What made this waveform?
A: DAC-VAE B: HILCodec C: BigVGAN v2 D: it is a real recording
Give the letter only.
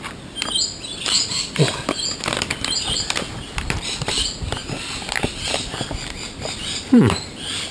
C